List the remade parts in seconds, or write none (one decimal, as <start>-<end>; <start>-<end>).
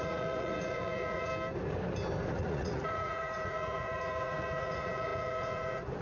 0.0-1.3; 2.3-6.0